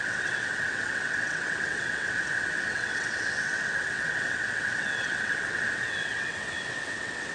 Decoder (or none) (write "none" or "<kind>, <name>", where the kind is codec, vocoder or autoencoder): vocoder, WaveNeXt